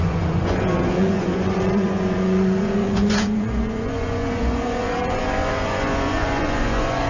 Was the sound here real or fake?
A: fake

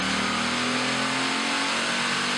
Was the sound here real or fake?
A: real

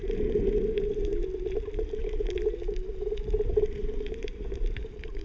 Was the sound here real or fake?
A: fake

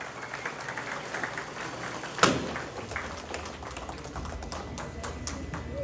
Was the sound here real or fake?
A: real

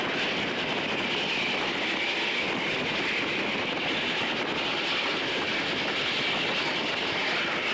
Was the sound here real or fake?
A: real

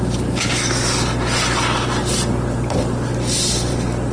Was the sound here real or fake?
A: real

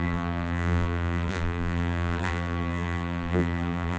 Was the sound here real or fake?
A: fake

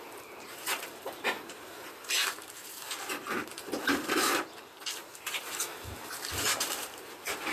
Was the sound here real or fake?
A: fake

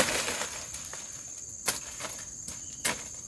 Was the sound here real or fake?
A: real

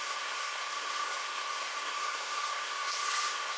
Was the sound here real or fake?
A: fake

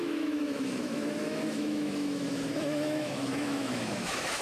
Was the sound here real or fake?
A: fake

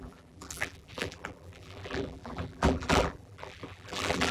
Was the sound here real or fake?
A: fake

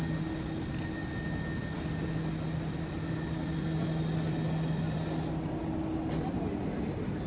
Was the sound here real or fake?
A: real